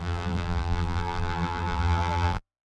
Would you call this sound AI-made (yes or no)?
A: yes